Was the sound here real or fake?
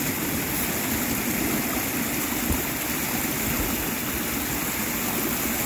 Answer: real